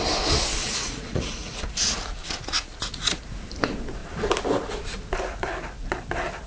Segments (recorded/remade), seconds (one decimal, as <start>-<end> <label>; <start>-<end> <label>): 0.0-0.6 recorded; 0.6-1.6 remade; 1.6-2.2 recorded; 2.2-3.2 remade; 3.2-6.5 recorded